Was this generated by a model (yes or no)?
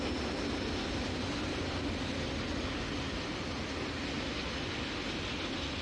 no